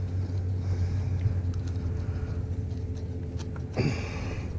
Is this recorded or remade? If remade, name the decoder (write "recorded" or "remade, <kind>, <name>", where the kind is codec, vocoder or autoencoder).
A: recorded